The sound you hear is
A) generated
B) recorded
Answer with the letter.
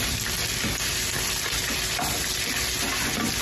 B